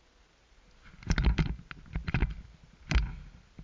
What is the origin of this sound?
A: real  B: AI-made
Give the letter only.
A